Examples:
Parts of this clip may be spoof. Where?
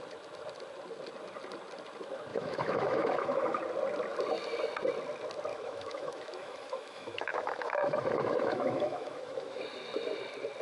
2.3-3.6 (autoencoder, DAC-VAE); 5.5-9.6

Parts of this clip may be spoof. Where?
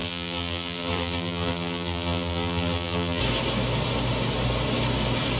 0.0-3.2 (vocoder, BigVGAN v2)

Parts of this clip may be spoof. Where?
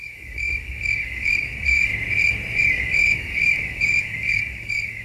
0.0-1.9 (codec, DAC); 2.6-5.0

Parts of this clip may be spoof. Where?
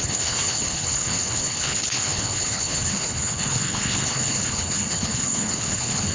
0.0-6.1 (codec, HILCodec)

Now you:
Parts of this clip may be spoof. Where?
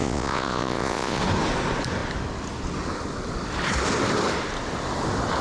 0.0-1.2 (vocoder, Vocos)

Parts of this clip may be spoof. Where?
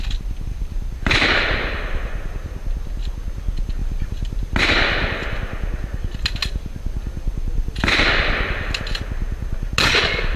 none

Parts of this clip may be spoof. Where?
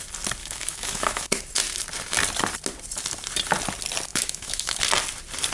0.4-1.4 (autoencoder, DAC-VAE); 4.1-4.8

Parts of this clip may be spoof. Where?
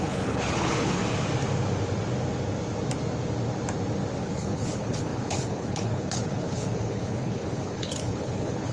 0.0-1.0 (codec, HILCodec); 4.2-8.7